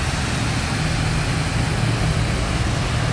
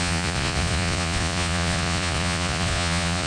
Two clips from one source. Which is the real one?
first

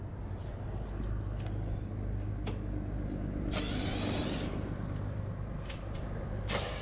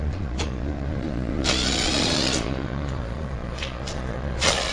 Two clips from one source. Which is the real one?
first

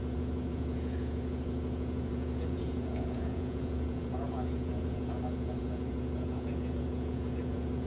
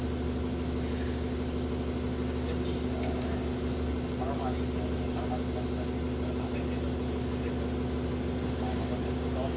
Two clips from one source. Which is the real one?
second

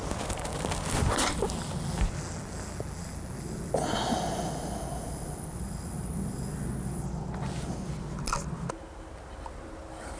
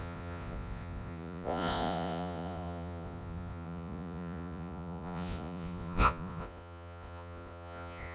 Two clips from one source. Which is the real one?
first